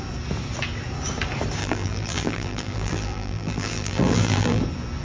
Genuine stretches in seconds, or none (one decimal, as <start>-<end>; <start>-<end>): 0.0-1.6; 4.6-5.0